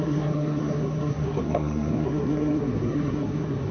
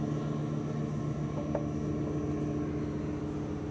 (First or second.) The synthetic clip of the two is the first